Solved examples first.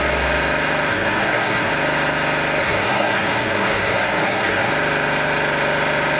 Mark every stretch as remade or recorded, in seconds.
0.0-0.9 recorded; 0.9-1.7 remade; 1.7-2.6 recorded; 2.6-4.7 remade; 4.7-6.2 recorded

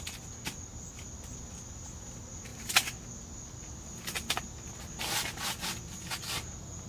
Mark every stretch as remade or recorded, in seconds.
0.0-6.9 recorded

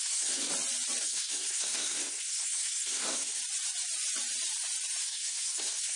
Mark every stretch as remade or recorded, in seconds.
0.0-0.5 remade; 0.5-1.0 recorded; 1.0-3.4 remade; 3.4-5.0 recorded; 5.0-6.0 remade